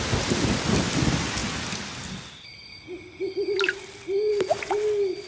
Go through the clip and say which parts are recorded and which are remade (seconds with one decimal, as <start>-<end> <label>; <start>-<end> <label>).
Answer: 0.0-5.3 recorded